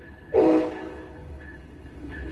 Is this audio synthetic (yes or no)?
yes